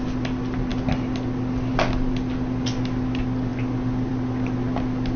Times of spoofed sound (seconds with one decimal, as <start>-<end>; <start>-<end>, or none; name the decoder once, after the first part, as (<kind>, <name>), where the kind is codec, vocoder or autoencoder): none